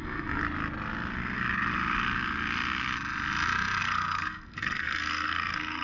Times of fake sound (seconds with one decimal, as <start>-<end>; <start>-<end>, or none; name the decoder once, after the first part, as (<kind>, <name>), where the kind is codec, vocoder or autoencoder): 0.0-0.4 (codec, SNAC); 3.8-5.8